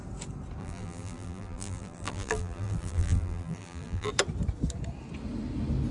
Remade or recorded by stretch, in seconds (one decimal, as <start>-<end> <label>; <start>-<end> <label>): 0.0-0.6 recorded; 0.6-4.1 remade; 4.1-5.9 recorded